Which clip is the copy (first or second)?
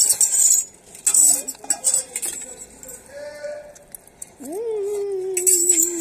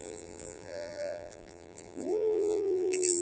second